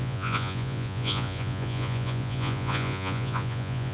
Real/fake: fake